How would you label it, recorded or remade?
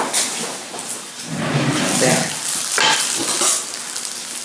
recorded